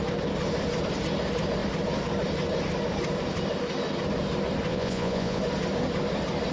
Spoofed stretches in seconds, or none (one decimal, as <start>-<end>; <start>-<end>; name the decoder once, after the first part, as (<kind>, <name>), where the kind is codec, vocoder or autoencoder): 4.7-5.4 (vocoder, Vocos)